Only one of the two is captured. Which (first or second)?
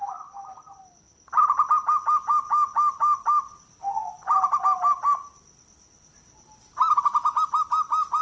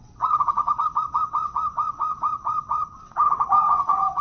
first